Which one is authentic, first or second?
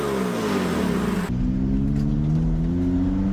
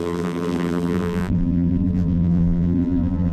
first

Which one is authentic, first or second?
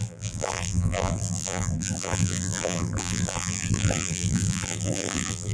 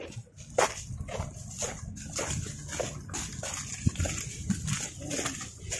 second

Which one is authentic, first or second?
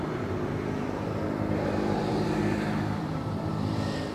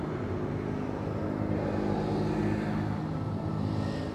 second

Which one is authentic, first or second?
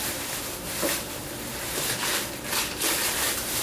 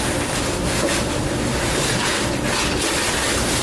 second